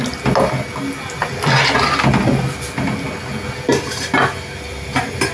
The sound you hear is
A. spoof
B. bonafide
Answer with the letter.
B